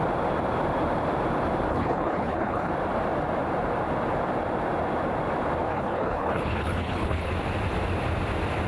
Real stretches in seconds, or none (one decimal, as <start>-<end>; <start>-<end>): 0.0-1.7; 2.7-5.7; 7.3-8.7